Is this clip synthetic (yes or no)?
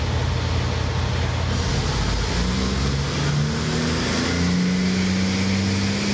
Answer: no